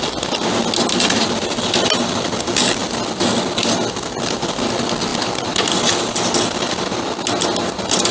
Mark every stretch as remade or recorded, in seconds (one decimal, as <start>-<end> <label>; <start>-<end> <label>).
0.0-8.1 recorded